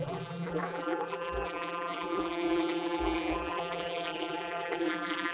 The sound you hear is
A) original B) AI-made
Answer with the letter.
B